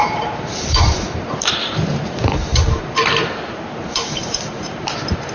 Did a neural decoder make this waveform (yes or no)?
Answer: yes